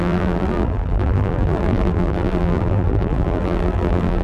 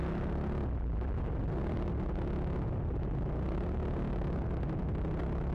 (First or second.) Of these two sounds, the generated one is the first